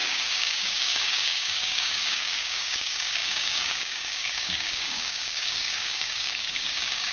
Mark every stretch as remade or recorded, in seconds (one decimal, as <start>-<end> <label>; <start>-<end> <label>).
0.0-7.1 remade